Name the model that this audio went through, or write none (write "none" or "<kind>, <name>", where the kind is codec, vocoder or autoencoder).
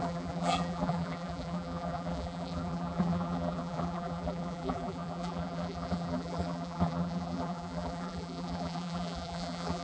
vocoder, BigVGAN v2